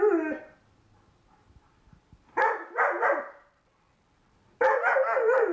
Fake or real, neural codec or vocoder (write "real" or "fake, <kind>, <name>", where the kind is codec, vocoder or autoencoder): real